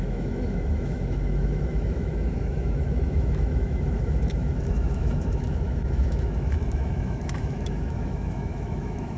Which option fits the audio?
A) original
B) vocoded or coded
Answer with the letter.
B